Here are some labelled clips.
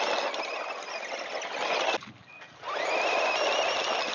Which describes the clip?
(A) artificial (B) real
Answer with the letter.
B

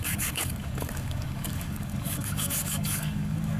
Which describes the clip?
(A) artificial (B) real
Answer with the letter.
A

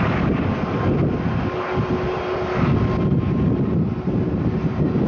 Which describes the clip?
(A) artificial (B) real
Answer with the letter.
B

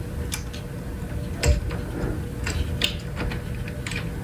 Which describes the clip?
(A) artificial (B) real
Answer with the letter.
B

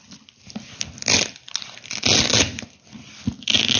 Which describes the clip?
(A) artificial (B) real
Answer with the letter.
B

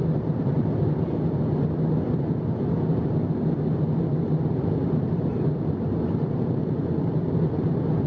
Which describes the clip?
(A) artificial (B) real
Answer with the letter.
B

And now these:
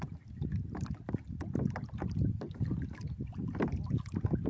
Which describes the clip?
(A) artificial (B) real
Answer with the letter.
B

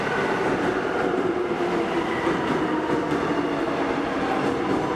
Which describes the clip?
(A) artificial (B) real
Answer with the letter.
B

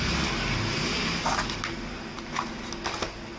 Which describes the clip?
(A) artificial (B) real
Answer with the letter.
B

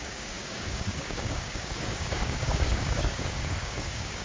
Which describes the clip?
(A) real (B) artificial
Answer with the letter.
B